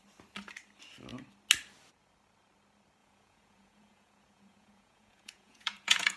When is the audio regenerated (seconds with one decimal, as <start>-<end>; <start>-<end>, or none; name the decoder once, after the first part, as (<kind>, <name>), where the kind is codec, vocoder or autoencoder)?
3.0-6.2 (vocoder, Vocos)